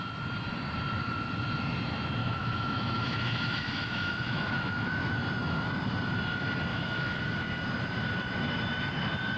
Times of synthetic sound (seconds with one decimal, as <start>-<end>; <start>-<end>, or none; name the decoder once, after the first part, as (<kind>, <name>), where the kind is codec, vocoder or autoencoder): 2.2-5.1 (autoencoder, DAC-VAE); 6.7-7.2